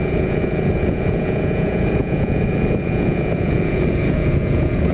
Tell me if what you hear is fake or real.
fake